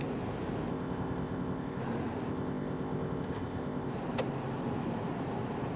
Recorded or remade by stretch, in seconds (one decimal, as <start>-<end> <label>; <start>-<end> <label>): 0.0-0.7 recorded; 0.7-1.8 remade; 1.8-2.3 recorded; 2.3-3.9 remade; 3.9-5.8 recorded